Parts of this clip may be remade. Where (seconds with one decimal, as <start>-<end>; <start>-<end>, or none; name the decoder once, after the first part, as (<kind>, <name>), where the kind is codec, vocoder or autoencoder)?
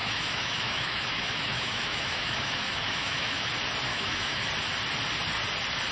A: 0.0-3.5 (autoencoder, DAC-VAE); 3.9-4.5